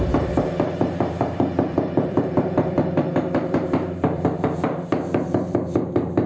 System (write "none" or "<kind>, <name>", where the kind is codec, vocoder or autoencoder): vocoder, BigVGAN v2